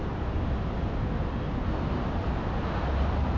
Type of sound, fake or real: real